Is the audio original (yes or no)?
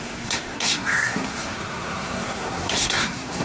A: no